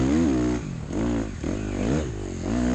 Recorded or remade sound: recorded